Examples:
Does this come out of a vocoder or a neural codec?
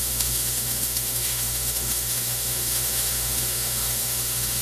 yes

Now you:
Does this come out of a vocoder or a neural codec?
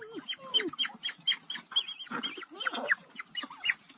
no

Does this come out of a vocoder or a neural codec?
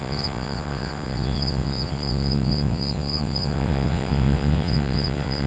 yes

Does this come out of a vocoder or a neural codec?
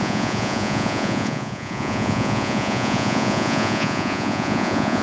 yes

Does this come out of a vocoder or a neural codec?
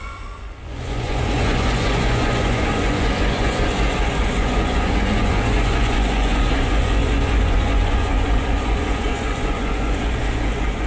yes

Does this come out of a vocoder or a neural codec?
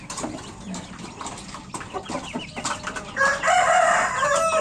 no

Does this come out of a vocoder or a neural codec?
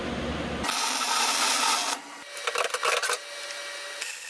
no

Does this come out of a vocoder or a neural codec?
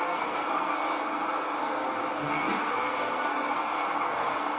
yes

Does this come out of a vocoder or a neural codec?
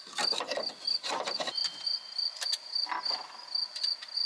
no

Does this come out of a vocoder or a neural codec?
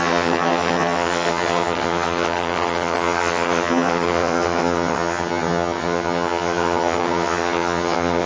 yes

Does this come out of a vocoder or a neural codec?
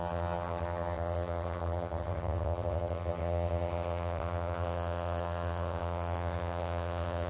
yes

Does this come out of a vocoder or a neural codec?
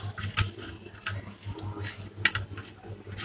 no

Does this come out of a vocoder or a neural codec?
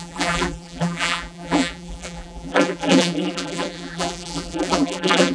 yes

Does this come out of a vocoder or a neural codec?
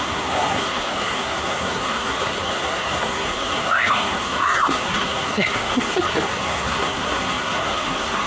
yes